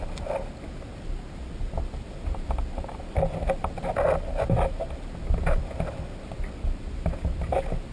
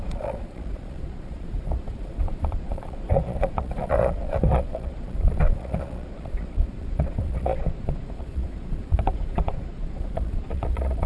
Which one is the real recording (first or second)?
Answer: first